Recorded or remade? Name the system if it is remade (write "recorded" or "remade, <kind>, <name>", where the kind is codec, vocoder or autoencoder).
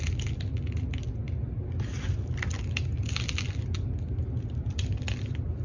recorded